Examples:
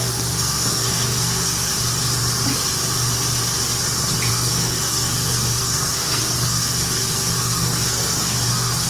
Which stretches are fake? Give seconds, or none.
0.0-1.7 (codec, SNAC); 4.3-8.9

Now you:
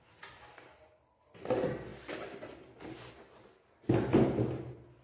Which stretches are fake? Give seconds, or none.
none

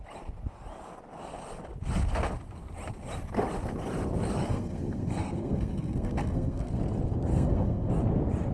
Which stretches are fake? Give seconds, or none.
4.4-6.8 (codec, SNAC); 7.3-7.9

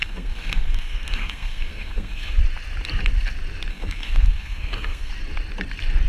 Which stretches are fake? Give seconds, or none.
0.0-2.4 (codec, SNAC); 3.7-5.1

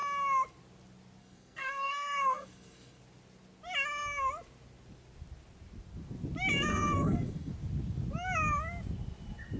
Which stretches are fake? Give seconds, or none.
1.2-3.0 (codec, SNAC); 6.7-7.5